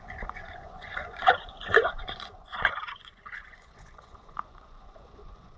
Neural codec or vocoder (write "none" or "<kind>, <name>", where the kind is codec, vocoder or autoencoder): vocoder, Vocos